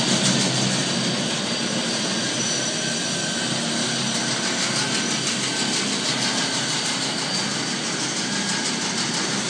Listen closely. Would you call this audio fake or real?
real